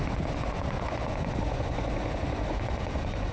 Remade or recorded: remade